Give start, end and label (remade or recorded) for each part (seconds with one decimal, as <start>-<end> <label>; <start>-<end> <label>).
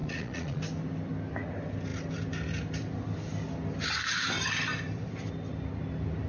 0.0-0.6 remade; 0.6-6.3 recorded